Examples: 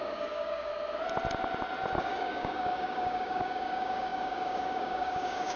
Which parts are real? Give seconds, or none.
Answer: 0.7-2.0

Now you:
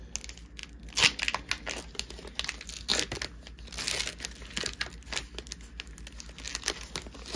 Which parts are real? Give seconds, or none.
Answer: 0.0-7.4

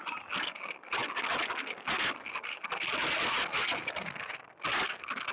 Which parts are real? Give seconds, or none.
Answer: 0.0-5.3

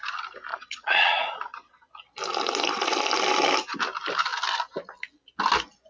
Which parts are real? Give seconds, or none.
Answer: 0.0-0.5; 1.9-5.9

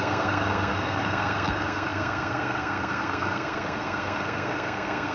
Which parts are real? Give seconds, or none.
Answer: none